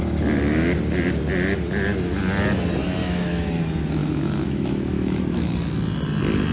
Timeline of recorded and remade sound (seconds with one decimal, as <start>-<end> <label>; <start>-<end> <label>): 0.0-3.0 recorded; 3.0-3.6 remade; 3.6-4.0 recorded; 4.0-5.7 remade; 5.7-6.5 recorded